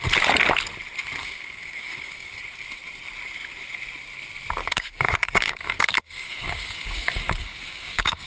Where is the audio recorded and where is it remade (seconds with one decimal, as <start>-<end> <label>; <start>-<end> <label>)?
0.0-1.2 recorded; 1.2-2.4 remade; 2.4-4.6 recorded; 4.6-8.3 remade